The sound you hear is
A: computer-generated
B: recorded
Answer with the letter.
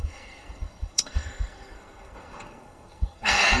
A